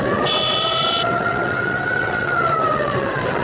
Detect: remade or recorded remade